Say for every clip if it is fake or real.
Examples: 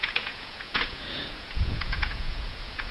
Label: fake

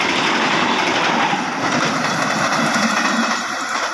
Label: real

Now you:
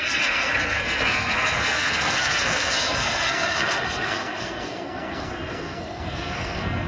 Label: fake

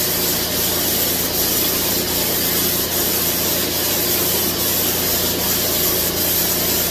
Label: real